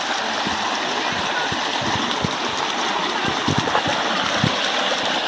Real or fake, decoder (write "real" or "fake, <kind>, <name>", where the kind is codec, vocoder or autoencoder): real